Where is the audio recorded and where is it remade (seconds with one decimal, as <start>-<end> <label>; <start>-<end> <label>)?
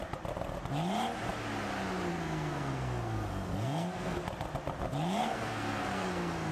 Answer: 0.0-2.1 recorded; 2.1-4.2 remade; 4.2-5.2 recorded; 5.2-6.5 remade